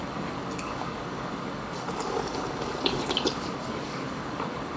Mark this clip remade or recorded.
remade